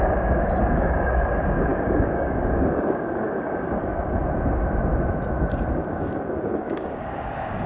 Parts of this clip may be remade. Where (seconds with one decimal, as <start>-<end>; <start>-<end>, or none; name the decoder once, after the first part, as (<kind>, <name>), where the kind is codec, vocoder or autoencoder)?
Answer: 0.0-4.2 (codec, DAC); 5.7-7.7